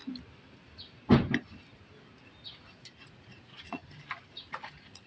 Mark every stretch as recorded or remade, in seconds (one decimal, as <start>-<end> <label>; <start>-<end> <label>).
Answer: 0.0-3.1 recorded; 3.1-3.8 remade; 3.8-4.5 recorded; 4.5-5.1 remade